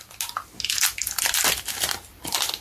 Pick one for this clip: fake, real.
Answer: real